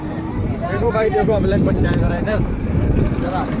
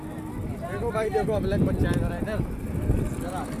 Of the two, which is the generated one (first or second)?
first